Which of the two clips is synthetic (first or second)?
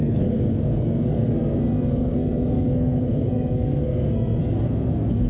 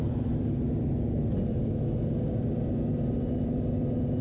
first